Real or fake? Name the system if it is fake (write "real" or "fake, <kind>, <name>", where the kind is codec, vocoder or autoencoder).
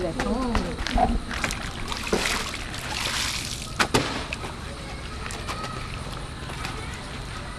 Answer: real